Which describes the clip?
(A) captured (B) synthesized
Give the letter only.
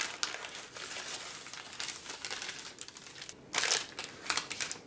A